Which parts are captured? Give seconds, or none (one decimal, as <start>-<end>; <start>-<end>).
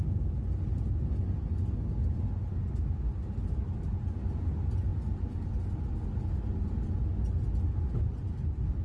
0.0-8.8